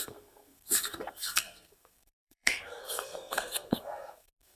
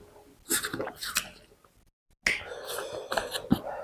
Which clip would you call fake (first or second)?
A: first